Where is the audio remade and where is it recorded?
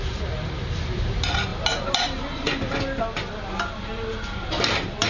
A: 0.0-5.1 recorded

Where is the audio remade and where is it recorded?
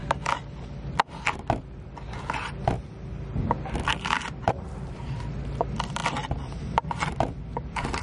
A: 0.0-1.6 recorded; 1.6-8.0 remade